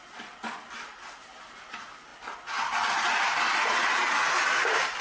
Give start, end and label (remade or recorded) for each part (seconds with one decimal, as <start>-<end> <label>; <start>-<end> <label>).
0.0-5.0 recorded

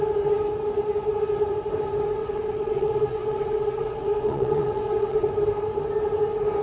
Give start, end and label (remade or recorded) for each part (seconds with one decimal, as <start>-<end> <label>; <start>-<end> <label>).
0.0-2.2 recorded; 2.2-5.3 remade; 5.3-6.6 recorded

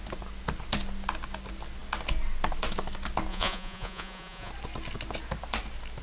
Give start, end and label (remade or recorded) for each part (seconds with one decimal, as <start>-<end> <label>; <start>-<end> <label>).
0.0-3.3 recorded; 3.3-4.5 remade; 4.5-6.0 recorded